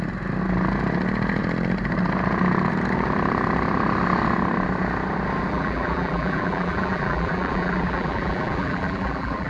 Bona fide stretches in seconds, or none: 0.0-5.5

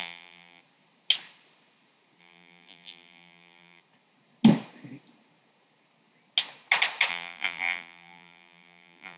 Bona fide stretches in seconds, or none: 0.6-2.2; 3.8-7.1

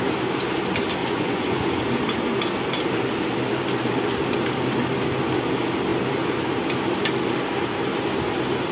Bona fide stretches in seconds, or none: 0.0-1.0; 1.8-8.7

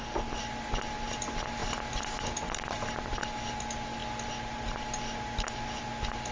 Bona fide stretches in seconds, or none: 0.0-6.3

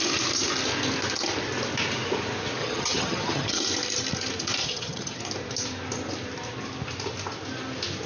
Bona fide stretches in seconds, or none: 0.0-2.6; 3.6-4.6; 5.2-8.1

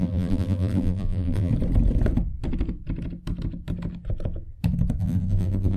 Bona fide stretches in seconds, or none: 1.5-5.0